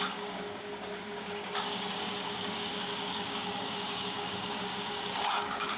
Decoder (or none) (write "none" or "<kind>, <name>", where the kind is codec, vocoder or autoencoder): codec, DAC